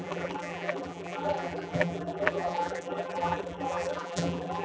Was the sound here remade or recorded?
remade